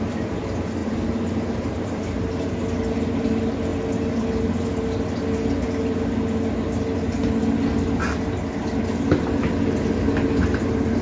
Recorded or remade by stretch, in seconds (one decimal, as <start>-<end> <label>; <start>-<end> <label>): 0.0-0.8 recorded; 0.8-2.0 remade; 2.0-11.0 recorded